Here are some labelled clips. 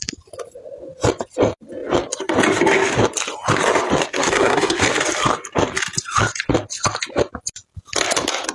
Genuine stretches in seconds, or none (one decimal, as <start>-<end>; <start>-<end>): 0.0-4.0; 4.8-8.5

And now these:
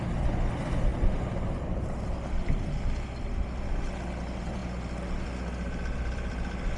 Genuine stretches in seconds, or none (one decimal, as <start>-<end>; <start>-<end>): 0.0-6.8

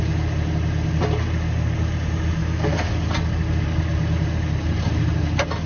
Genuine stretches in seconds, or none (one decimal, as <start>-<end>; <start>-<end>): 0.0-2.4; 2.9-5.7

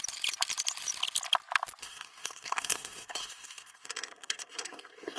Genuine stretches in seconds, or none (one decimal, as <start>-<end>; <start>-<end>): 0.0-1.8